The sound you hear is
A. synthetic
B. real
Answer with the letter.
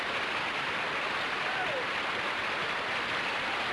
B